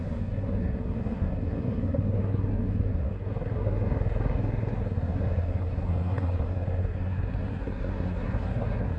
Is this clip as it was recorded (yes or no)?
no